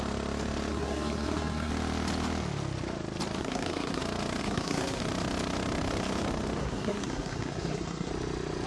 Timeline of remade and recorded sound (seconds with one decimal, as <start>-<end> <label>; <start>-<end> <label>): 0.0-0.7 recorded; 0.7-1.7 remade; 1.7-3.4 recorded; 3.4-4.0 remade; 4.0-4.4 recorded; 4.4-5.0 remade; 5.0-6.6 recorded; 6.6-8.1 remade; 8.1-8.7 recorded